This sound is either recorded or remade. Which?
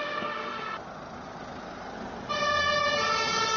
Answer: recorded